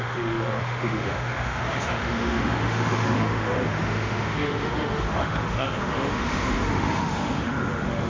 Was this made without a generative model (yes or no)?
no